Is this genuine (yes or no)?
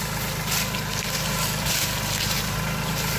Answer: yes